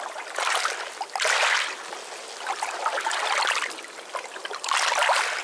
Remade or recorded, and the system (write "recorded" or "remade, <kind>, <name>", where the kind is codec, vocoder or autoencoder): recorded